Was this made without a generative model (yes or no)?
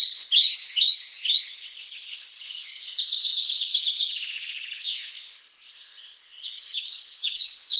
no